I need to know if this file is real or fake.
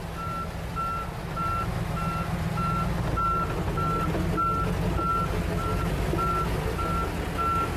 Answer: real